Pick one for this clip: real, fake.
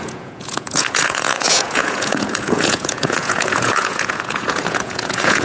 fake